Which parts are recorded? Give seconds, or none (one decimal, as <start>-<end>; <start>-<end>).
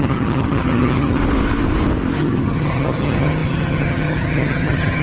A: 1.2-2.2